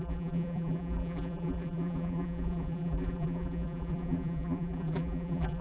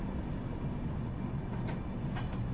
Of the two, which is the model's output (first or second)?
first